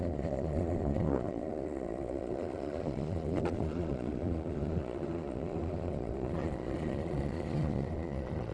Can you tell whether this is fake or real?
fake